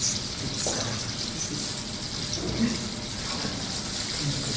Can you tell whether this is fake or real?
real